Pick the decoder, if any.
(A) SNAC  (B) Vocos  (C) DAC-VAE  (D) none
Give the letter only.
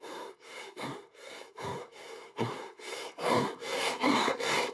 A